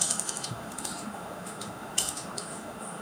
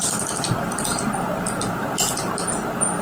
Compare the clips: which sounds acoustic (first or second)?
second